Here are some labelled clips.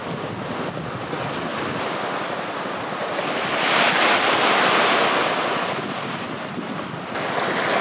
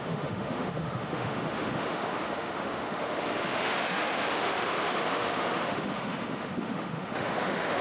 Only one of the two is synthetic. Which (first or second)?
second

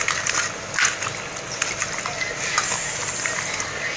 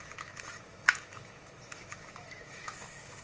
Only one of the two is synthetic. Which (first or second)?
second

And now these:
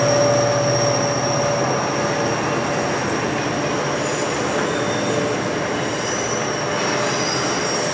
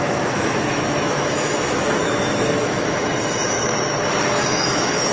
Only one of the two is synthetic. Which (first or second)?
second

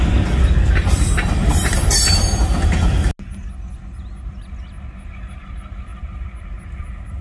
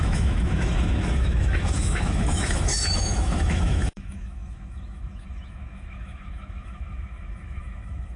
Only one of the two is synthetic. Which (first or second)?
second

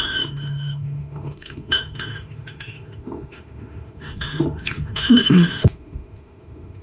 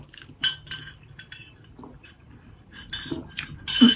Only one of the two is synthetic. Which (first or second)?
first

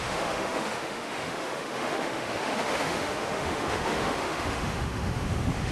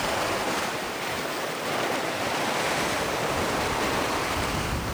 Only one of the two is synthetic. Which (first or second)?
first